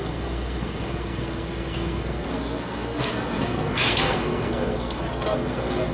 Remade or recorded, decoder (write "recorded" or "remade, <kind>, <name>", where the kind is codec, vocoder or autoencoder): remade, codec, SNAC